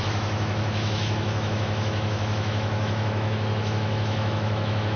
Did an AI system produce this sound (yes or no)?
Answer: yes